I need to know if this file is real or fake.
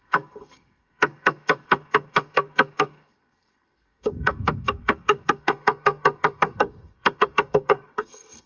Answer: fake